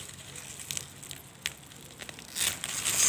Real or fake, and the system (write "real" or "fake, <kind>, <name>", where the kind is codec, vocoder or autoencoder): real